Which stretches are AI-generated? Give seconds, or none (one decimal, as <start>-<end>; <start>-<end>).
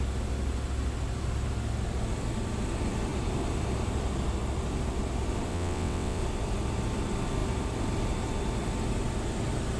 5.5-6.2